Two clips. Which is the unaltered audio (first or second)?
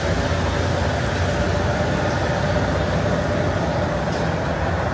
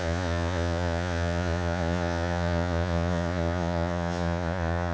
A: first